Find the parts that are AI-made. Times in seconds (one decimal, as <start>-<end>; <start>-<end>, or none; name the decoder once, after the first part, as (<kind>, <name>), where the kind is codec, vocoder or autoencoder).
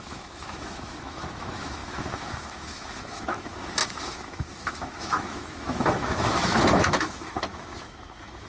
0.0-8.5 (autoencoder, DAC-VAE)